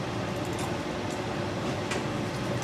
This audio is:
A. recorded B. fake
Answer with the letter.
B